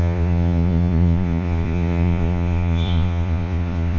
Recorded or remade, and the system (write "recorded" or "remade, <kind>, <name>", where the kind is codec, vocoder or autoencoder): remade, vocoder, Vocos